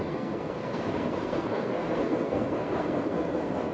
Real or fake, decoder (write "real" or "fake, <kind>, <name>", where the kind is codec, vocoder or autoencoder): fake, codec, SNAC